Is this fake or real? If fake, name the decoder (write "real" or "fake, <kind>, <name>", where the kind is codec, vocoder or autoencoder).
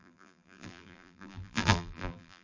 fake, vocoder, BigVGAN v2